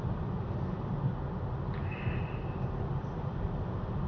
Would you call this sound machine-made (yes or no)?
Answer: no